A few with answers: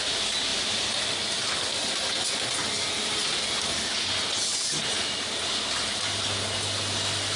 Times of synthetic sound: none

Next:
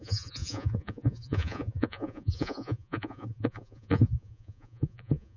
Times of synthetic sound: 0.0-5.4 (vocoder, Vocos)